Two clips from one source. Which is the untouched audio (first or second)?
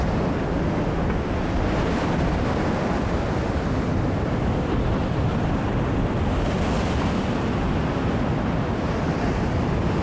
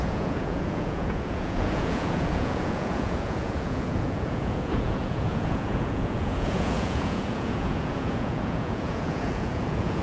first